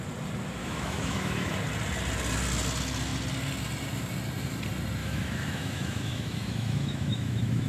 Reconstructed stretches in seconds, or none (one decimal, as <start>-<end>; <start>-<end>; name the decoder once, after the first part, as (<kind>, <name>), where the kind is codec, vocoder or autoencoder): 0.6-1.5 (autoencoder, DAC-VAE); 5.0-7.7